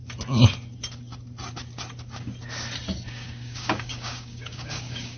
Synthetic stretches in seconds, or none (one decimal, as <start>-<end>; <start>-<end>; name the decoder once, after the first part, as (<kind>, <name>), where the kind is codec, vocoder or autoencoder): 3.1-5.2 (codec, DAC)